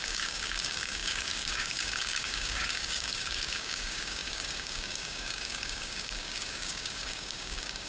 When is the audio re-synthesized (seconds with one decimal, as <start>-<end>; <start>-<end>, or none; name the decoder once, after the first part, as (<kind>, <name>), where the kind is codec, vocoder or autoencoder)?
0.0-7.9 (codec, DAC)